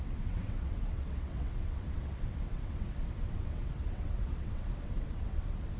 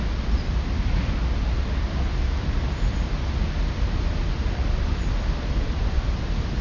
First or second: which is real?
second